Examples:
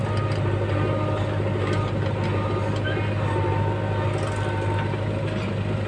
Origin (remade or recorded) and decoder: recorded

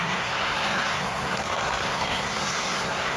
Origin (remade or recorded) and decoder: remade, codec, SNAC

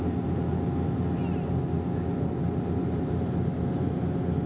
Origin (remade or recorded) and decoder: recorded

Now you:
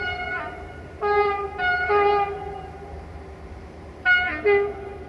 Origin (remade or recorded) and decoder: recorded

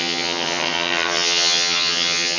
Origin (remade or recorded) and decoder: remade, vocoder, HiFi-GAN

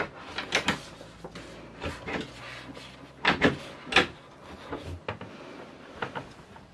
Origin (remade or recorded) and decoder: recorded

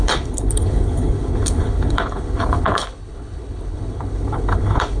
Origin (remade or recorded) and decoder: remade, codec, HILCodec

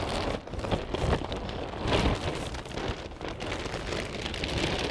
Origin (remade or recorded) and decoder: recorded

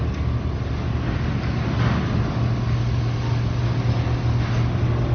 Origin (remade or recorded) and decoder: recorded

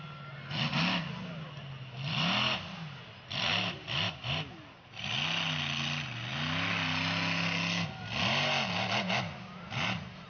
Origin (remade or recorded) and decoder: recorded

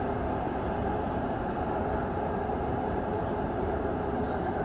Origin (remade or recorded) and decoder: recorded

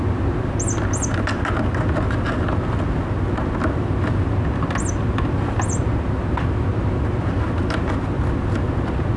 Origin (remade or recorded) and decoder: recorded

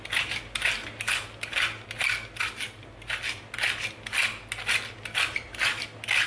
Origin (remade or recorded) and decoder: recorded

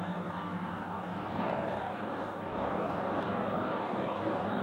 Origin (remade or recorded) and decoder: remade, codec, DAC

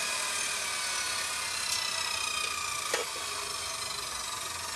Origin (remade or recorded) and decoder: recorded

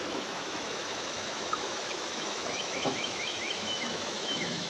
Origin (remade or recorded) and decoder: remade, autoencoder, DAC-VAE